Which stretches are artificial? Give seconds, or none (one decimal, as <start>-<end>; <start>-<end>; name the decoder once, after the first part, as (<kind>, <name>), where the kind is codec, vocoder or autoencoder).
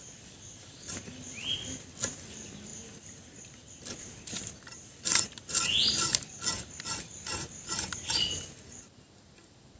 none